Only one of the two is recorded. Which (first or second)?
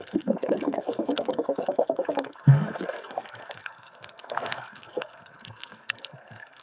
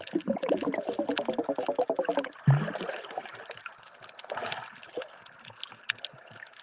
second